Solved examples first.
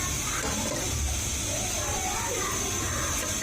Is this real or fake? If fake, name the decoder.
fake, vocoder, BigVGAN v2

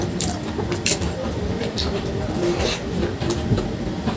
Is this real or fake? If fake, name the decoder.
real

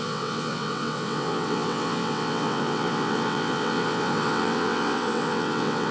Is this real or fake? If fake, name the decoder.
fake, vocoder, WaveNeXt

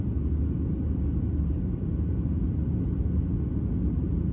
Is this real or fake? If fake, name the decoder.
real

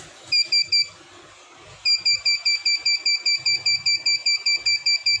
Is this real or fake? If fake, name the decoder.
real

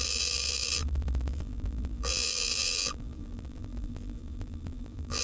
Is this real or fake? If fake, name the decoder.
fake, vocoder, BigVGAN v2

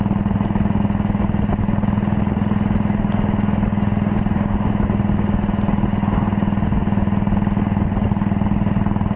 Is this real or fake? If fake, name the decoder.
real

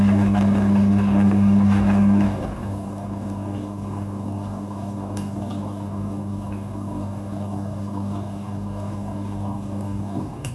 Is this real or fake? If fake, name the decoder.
fake, codec, DAC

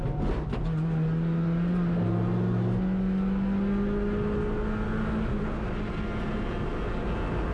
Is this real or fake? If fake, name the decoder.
real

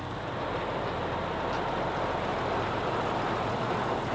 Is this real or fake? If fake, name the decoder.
real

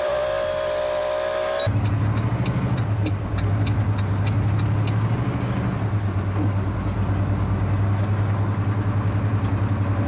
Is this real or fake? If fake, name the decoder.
real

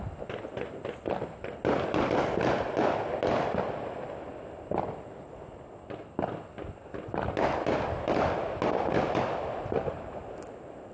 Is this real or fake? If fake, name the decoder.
real